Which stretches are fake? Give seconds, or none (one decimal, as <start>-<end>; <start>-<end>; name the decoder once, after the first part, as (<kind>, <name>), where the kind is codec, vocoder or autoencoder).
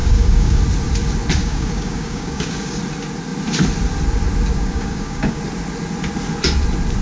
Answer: 0.0-0.6 (codec, DAC); 1.4-2.8; 4.5-5.4